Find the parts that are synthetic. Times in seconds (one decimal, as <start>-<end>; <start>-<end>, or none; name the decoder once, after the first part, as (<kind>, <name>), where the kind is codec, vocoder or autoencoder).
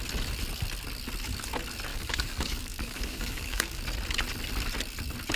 1.9-3.8 (codec, DAC)